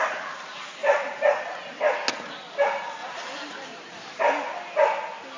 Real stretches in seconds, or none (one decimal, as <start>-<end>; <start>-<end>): 0.0-0.8; 1.8-3.0; 4.2-5.4